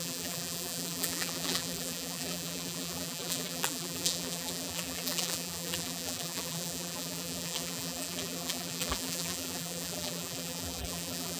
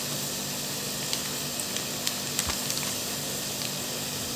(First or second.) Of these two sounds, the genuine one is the second